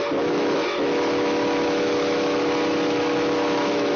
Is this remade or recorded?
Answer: remade